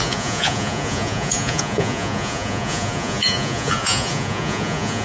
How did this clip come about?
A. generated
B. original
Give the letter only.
A